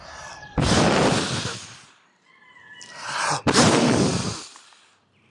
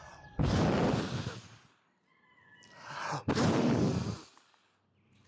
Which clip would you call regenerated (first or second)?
first